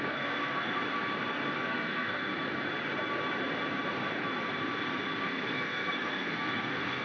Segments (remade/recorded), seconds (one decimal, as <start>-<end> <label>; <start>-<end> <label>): 0.0-0.8 remade; 0.8-1.6 recorded; 1.6-2.3 remade; 2.3-5.2 recorded; 5.2-7.0 remade